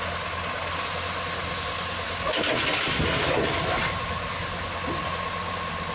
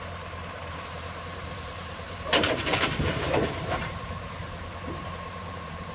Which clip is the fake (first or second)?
second